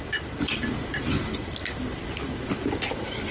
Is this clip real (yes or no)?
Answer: yes